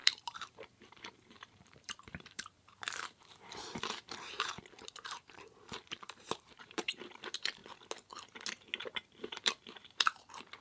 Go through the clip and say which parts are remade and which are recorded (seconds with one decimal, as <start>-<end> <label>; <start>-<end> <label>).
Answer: 0.0-7.6 remade; 7.6-8.8 recorded; 8.8-10.6 remade